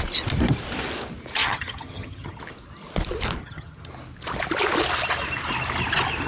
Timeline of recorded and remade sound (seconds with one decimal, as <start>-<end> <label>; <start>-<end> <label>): 0.0-1.4 recorded; 1.4-2.4 remade; 2.4-3.4 recorded; 3.4-3.9 remade; 3.9-6.3 recorded

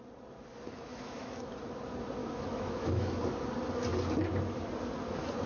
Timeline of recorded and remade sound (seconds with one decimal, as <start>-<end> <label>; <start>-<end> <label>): 0.0-0.9 recorded; 0.9-1.5 remade; 1.5-2.2 recorded; 2.2-3.2 remade; 3.2-5.5 recorded

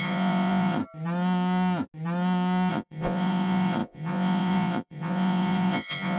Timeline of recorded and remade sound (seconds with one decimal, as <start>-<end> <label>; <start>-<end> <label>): 0.0-0.8 remade; 0.8-2.7 recorded; 2.7-6.2 remade

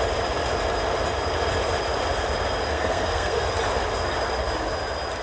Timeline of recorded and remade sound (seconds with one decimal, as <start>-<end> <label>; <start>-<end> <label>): 0.0-2.7 recorded; 2.7-3.5 remade; 3.5-5.2 recorded